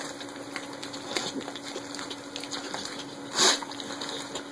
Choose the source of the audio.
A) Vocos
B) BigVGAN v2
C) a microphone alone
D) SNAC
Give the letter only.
C